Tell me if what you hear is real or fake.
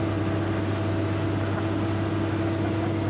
real